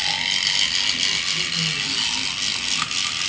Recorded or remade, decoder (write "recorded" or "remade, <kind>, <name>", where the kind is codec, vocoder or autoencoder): recorded